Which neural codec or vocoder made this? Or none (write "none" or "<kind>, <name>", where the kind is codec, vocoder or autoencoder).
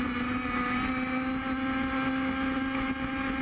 none